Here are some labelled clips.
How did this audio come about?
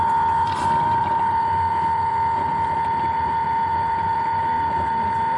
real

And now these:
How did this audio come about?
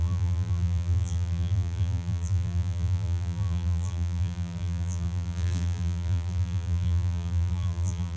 fake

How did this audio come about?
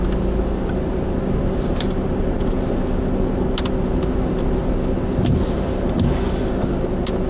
real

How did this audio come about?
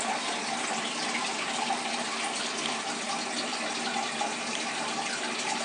real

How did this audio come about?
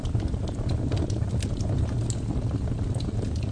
real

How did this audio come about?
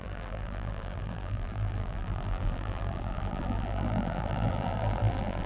fake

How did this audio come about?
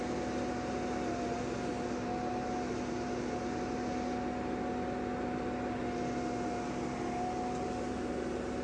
real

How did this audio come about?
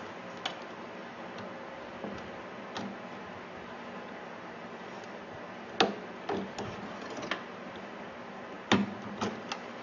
real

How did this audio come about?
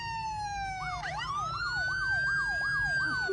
real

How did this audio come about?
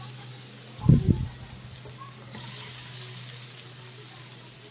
real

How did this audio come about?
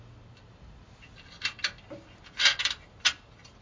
real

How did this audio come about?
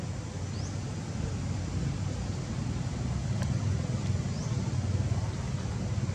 real